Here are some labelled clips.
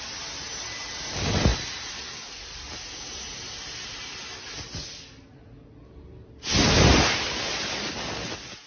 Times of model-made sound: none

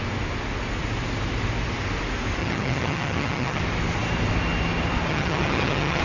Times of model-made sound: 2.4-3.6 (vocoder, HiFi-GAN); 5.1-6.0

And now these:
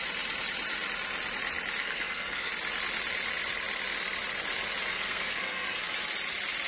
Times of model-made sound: 1.8-2.5 (codec, SNAC); 4.9-5.8

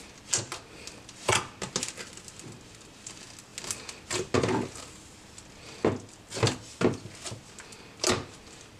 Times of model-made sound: none

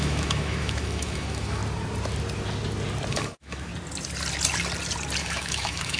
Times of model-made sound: 0.0-1.6 (autoencoder, DAC-VAE); 3.1-3.7; 5.2-6.0

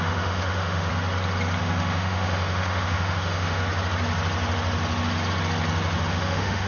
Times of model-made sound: 0.0-0.9 (autoencoder, DAC-VAE); 1.6-3.6; 6.1-6.7

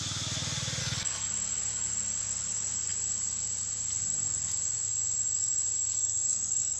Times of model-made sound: 0.8-1.3 (codec, SNAC); 6.0-6.8